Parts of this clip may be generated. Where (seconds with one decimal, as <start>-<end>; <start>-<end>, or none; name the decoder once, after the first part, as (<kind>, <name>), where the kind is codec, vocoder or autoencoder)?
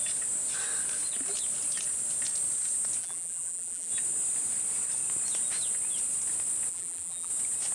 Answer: 3.0-3.9 (vocoder, BigVGAN v2); 6.7-7.3